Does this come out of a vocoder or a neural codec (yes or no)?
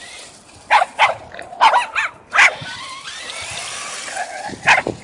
no